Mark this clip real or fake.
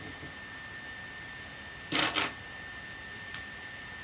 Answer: real